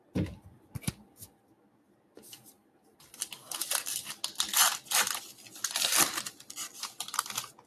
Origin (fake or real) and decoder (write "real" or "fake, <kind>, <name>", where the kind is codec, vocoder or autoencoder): real